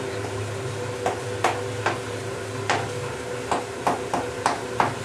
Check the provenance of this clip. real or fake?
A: real